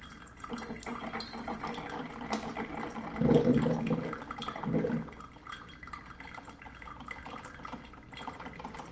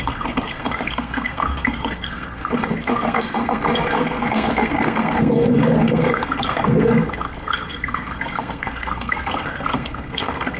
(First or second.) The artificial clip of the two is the second